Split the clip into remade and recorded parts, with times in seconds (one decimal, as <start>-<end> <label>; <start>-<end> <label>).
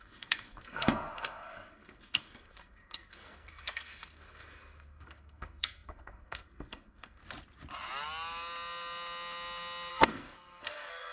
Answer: 0.0-7.2 remade; 7.2-9.9 recorded; 9.9-11.1 remade